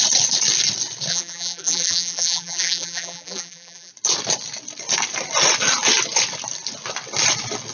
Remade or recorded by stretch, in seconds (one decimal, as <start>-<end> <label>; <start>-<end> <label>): 0.0-1.1 recorded; 1.1-3.9 remade; 3.9-7.7 recorded